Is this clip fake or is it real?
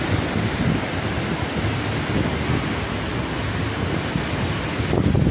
real